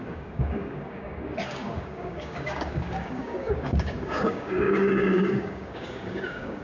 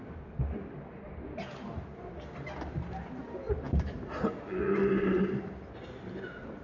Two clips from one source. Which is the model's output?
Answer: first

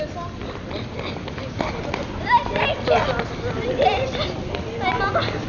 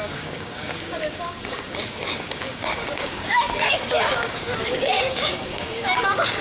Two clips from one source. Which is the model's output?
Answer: second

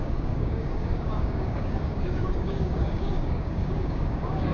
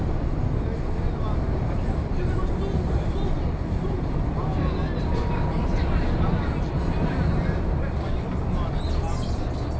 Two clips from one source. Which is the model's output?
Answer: first